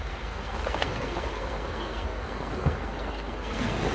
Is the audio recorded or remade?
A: remade